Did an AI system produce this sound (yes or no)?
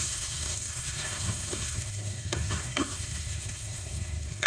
yes